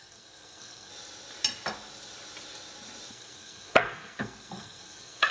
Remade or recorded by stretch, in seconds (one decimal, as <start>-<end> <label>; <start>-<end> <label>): 0.0-0.9 remade; 0.9-3.1 recorded; 3.1-5.3 remade